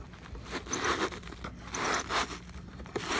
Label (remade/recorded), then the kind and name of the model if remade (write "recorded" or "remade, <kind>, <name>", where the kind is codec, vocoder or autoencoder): recorded